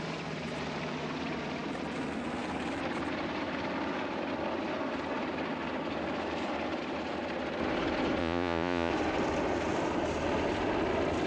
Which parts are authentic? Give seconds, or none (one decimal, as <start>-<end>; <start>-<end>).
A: 0.0-8.2; 8.9-11.3

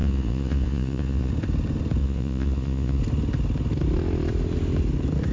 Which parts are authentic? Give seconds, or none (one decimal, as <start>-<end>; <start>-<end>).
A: 1.3-2.0; 3.0-5.3

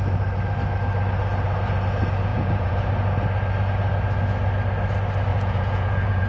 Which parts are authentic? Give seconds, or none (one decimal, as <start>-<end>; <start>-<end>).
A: 0.0-2.3; 2.9-5.3

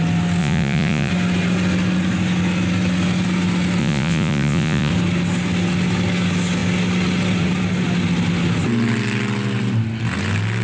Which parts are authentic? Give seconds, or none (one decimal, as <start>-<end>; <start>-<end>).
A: 0.0-0.4; 1.1-3.8; 4.9-10.6

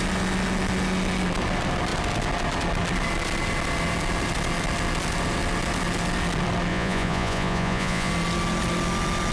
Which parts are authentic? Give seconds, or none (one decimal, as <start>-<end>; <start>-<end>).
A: 0.0-6.7; 8.1-9.3

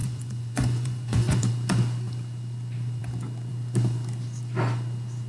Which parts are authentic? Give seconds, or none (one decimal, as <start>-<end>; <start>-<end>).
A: 1.5-5.3

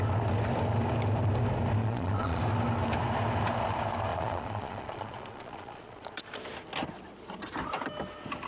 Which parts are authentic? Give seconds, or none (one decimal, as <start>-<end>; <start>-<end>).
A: 0.0-1.8; 2.4-4.1; 6.2-8.5

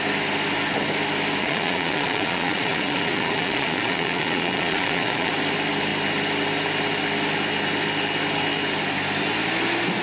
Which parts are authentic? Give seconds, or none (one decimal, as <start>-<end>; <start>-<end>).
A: 0.0-1.4; 5.3-10.0